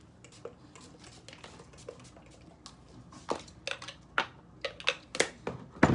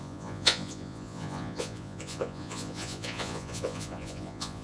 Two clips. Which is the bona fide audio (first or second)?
first